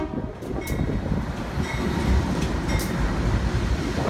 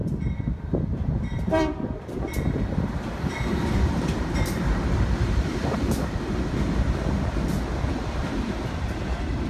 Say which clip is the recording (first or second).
first